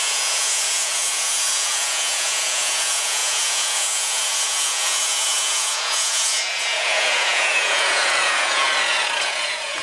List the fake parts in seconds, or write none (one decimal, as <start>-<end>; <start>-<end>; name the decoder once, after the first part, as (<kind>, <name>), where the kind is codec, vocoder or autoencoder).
0.0-9.8 (vocoder, Vocos)